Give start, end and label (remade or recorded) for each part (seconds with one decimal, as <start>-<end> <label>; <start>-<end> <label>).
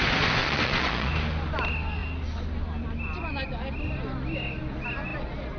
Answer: 0.0-0.4 recorded; 0.4-1.1 remade; 1.1-5.6 recorded